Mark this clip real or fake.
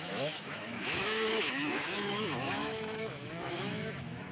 fake